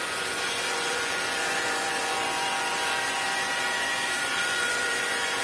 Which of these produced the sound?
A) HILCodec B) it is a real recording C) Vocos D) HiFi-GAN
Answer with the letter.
C